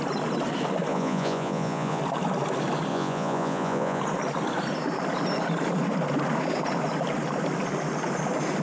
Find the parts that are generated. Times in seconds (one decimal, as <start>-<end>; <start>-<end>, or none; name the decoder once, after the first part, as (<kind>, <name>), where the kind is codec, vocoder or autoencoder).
0.9-2.0 (vocoder, Vocos); 2.9-4.0